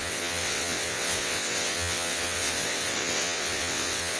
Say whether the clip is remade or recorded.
remade